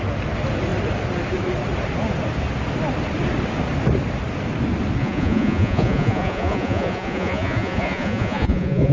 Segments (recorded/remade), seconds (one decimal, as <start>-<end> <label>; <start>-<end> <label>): 0.0-5.0 recorded; 5.0-8.9 remade